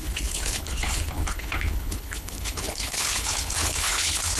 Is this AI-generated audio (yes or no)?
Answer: yes